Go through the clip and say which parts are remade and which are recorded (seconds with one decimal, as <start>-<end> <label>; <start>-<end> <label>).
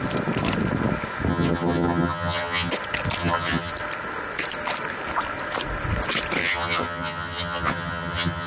0.0-1.3 recorded; 1.3-2.7 remade; 2.7-3.2 recorded; 3.2-3.7 remade; 3.7-6.4 recorded; 6.4-8.5 remade